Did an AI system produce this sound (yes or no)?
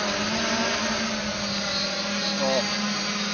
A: no